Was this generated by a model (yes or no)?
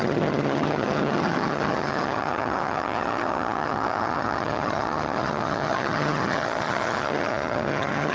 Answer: yes